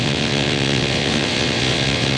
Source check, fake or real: fake